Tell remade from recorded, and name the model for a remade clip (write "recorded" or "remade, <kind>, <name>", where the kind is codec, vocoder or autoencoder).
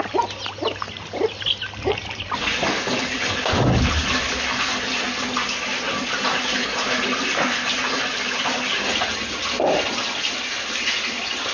recorded